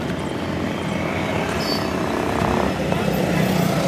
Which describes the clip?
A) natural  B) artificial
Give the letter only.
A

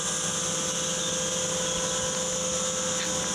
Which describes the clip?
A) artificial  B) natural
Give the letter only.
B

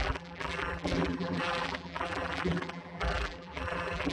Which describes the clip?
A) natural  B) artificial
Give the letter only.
B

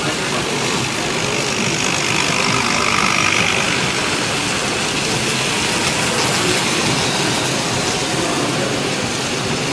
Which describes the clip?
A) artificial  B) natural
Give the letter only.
B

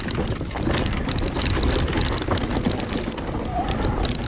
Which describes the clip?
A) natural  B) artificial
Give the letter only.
A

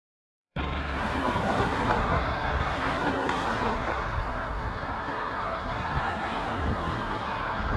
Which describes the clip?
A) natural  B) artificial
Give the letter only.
B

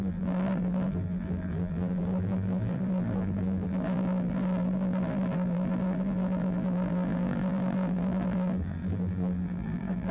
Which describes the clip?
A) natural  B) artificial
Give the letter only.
B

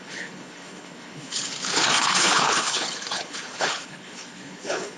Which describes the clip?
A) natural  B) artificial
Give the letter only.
B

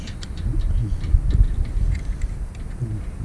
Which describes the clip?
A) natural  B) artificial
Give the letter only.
A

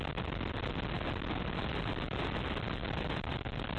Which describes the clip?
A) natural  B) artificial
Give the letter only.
A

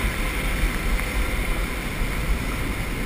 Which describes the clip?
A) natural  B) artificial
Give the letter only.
A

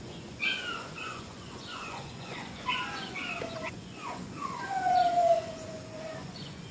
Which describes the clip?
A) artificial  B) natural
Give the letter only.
A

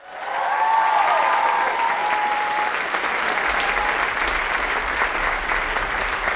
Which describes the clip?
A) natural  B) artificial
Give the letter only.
A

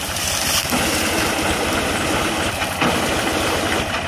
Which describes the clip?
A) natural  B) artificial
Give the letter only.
A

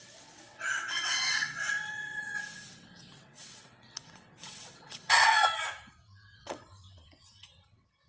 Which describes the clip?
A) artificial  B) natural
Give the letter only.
A